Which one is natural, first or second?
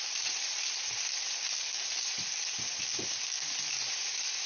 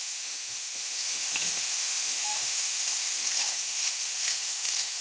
first